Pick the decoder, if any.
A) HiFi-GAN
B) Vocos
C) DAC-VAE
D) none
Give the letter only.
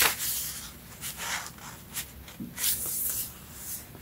D